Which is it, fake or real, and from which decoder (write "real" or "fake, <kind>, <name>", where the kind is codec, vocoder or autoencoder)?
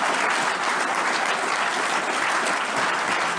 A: real